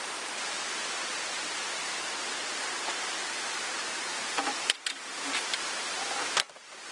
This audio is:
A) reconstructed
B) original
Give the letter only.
A